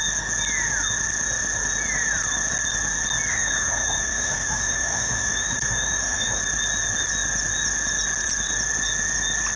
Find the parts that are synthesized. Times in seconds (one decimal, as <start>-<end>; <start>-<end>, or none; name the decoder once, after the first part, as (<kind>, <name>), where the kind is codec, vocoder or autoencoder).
3.3-6.4 (autoencoder, DAC-VAE)